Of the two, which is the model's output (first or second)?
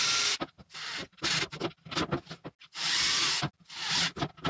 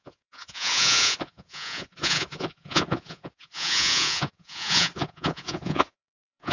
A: second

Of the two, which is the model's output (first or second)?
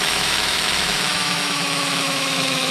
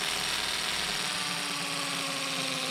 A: first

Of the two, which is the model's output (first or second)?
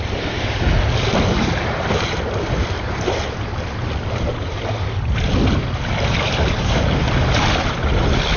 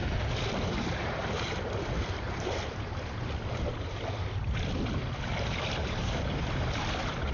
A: second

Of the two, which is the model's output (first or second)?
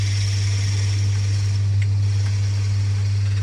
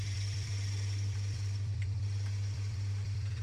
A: second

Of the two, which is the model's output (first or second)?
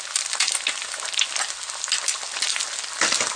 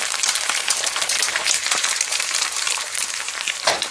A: second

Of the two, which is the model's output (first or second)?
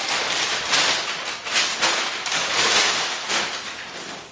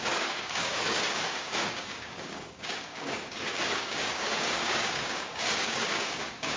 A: second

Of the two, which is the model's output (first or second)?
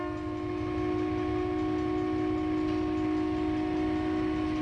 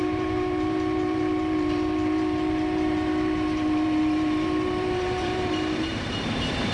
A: second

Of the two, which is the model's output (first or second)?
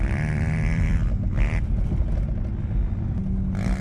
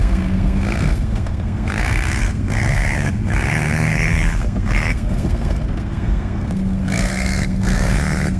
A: second